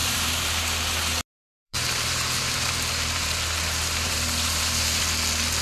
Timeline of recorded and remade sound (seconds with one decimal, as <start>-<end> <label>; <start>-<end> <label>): 0.0-0.6 remade; 0.6-1.6 recorded; 1.6-5.0 remade; 5.0-5.6 recorded